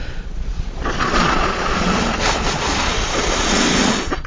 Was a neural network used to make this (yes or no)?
yes